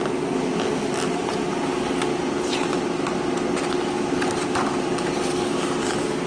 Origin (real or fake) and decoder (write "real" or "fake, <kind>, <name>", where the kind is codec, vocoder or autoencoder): real